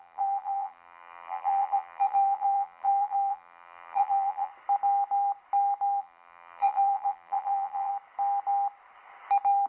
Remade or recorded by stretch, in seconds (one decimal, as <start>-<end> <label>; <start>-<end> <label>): 0.0-4.5 remade; 4.5-6.0 recorded; 6.0-7.9 remade; 7.9-9.7 recorded